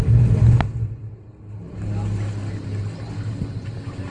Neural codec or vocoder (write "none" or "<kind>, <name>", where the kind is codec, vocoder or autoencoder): none